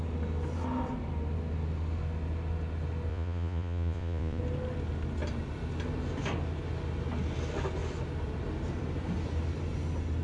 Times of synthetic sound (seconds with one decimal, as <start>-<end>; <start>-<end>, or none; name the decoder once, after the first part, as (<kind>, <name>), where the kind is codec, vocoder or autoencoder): 3.1-4.4 (vocoder, Vocos)